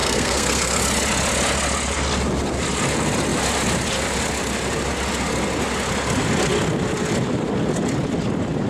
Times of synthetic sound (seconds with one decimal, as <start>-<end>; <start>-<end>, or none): 0.0-0.8